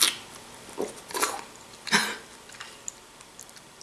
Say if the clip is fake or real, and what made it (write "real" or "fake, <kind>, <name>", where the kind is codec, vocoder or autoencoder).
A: real